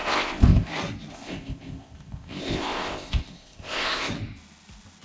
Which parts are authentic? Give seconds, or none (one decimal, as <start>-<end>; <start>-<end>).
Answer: 0.7-1.1; 4.1-5.0